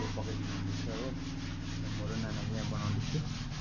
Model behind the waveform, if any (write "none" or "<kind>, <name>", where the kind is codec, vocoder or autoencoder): none